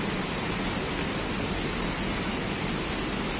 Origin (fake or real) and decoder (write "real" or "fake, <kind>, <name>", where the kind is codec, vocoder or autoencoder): real